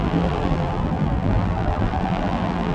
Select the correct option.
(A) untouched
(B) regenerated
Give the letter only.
B